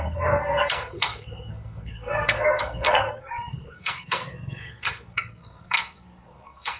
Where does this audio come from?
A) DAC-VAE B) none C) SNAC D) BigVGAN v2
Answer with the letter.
C